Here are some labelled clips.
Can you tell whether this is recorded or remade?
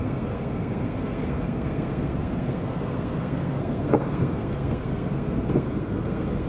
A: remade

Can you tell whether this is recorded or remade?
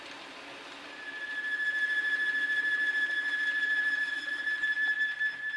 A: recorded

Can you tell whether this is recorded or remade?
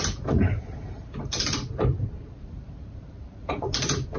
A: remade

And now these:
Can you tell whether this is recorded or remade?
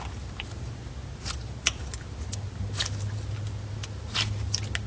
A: recorded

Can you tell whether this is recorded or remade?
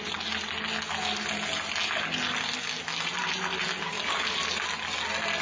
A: recorded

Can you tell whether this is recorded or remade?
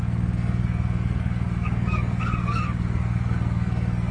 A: remade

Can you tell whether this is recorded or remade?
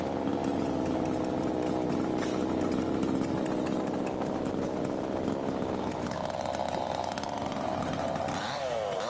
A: recorded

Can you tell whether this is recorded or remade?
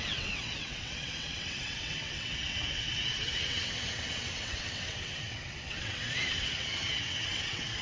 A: remade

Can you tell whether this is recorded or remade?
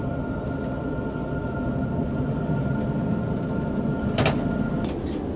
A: recorded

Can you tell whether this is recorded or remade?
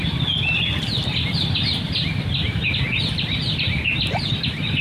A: recorded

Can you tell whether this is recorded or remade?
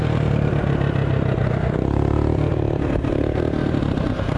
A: recorded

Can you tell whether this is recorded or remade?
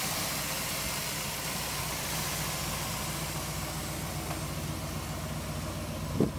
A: recorded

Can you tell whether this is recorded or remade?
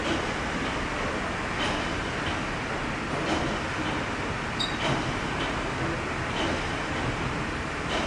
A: recorded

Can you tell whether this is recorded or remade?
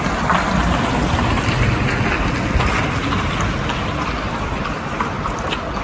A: recorded